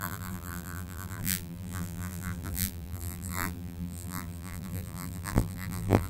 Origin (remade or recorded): remade